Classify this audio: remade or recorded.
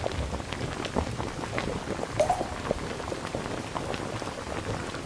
recorded